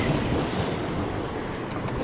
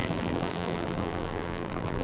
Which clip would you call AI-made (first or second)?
second